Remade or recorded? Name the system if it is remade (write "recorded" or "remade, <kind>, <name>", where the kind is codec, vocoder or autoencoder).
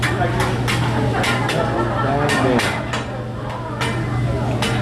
recorded